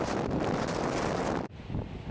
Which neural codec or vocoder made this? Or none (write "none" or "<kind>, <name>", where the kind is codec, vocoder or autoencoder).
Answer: none